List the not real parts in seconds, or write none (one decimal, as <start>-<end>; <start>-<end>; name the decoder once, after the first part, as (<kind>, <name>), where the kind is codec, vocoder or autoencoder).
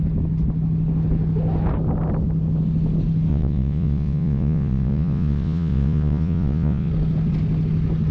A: 3.3-6.9 (vocoder, Vocos)